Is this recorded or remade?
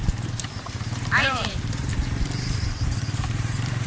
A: remade